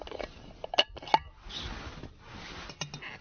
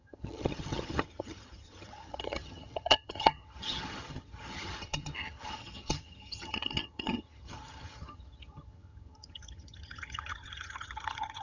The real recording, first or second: first